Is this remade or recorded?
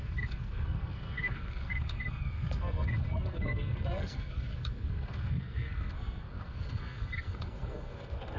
remade